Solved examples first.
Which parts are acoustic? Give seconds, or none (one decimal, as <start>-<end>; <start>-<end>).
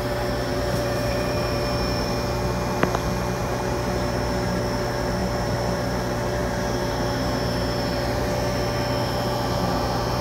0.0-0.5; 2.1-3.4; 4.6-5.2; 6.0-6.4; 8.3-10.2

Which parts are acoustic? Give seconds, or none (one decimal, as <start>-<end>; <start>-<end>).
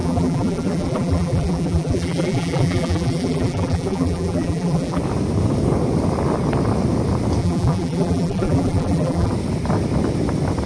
5.0-7.4; 9.3-10.7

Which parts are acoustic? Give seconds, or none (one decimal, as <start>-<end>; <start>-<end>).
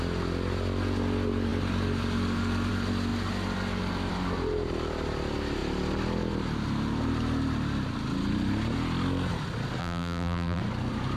0.0-9.8; 10.6-11.2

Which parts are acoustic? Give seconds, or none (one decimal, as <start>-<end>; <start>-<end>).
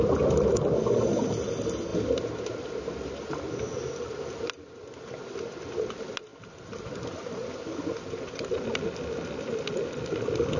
0.0-10.6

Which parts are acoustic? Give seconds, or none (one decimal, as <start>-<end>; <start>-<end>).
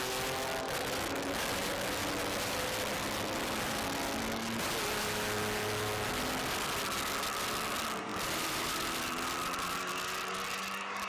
0.0-8.1; 9.9-11.1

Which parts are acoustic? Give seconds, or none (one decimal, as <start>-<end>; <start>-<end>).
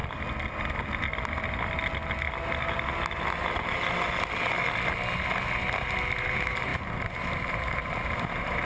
0.0-0.7; 1.1-6.2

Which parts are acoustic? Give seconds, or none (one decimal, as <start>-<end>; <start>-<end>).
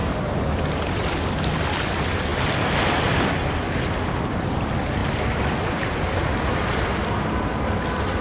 0.6-5.0; 6.2-8.2